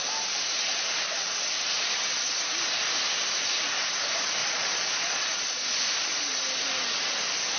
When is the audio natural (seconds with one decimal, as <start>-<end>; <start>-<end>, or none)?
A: 0.0-4.4; 5.6-7.6